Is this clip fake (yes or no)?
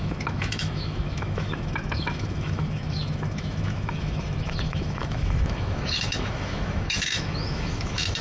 yes